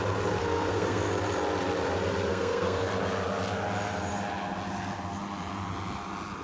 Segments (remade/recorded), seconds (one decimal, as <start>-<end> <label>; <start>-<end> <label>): 0.0-0.4 recorded; 0.4-1.1 remade; 1.1-2.3 recorded; 2.3-2.9 remade; 2.9-6.4 recorded